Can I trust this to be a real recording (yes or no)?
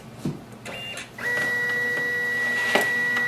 yes